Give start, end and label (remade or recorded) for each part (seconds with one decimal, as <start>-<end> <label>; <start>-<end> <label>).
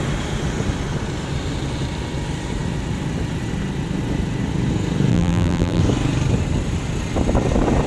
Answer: 0.0-5.1 recorded; 5.1-5.8 remade; 5.8-7.9 recorded